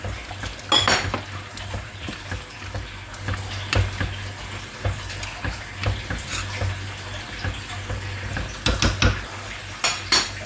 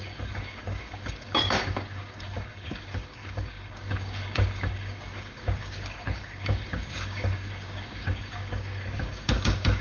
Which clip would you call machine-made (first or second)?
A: second